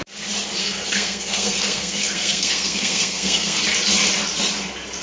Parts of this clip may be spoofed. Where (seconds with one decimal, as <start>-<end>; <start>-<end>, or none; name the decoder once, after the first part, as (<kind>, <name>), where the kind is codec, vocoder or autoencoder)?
0.6-3.6 (codec, SNAC)